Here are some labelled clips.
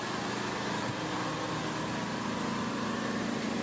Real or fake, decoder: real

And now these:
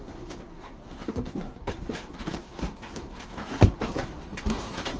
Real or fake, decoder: fake, codec, SNAC